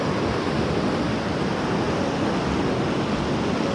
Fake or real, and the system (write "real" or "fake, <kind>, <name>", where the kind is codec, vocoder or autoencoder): real